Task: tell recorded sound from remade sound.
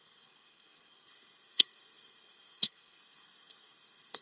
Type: remade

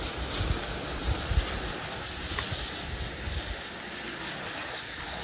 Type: recorded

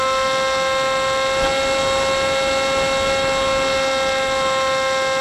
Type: recorded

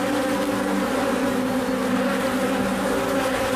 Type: recorded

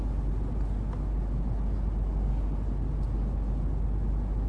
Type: recorded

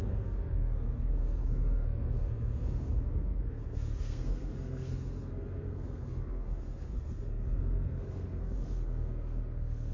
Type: remade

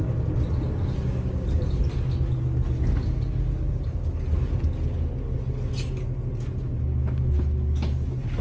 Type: recorded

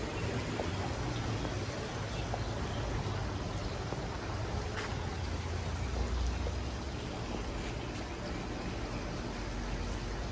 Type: recorded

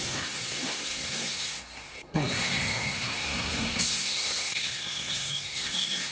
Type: remade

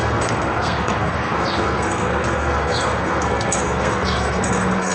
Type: remade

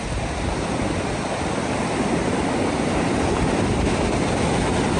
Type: recorded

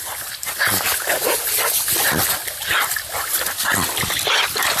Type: recorded